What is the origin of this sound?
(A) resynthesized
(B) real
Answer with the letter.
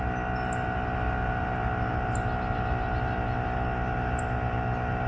B